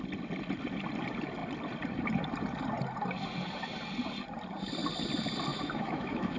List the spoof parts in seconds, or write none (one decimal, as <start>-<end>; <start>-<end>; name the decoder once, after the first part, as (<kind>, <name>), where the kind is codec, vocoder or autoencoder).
5.5-6.4 (autoencoder, DAC-VAE)